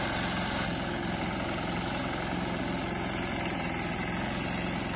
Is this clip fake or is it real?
real